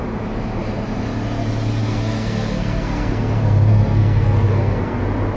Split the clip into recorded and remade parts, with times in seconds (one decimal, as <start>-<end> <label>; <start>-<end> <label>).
0.0-1.8 recorded; 1.8-5.0 remade; 5.0-5.4 recorded